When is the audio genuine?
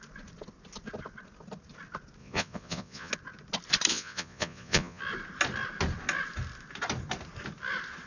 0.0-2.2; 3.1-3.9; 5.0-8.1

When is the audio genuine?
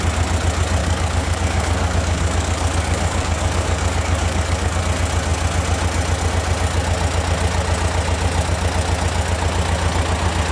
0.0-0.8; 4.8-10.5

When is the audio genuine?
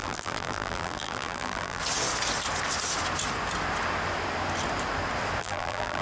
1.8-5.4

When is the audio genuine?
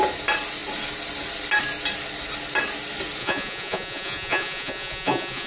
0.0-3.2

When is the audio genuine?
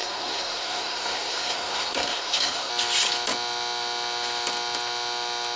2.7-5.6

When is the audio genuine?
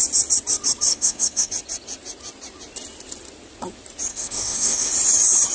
0.0-0.9; 1.5-4.1; 4.9-5.5